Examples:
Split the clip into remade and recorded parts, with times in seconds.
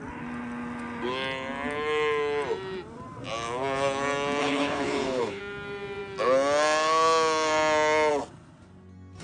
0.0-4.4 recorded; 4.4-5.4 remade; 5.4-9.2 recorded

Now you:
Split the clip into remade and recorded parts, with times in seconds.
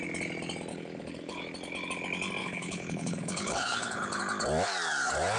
0.0-0.7 recorded; 0.7-1.4 remade; 1.4-2.4 recorded; 2.4-4.2 remade; 4.2-5.4 recorded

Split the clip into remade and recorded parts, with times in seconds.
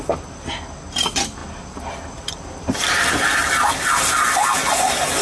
0.0-5.2 recorded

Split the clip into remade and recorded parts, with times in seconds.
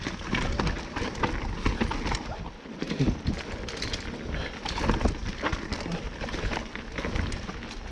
0.0-7.9 recorded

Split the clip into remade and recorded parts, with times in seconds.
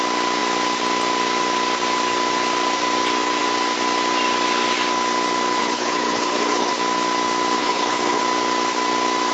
0.0-5.6 recorded; 5.6-6.7 remade; 6.7-7.6 recorded; 7.6-8.2 remade; 8.2-9.3 recorded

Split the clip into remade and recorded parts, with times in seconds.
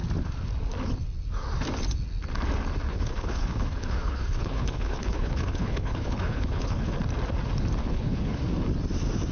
0.0-2.9 recorded; 2.9-6.9 remade; 6.9-7.8 recorded; 7.8-8.4 remade; 8.4-9.3 recorded